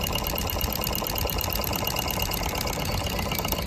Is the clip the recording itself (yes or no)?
yes